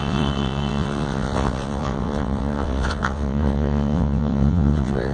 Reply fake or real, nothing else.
fake